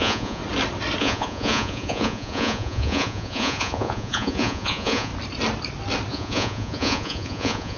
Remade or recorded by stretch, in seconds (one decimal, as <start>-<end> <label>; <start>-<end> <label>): 0.0-0.4 remade; 0.4-1.0 recorded; 1.0-5.1 remade; 5.1-6.1 recorded; 6.1-7.8 remade